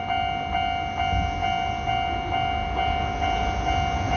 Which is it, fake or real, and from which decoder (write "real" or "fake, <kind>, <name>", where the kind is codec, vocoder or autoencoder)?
real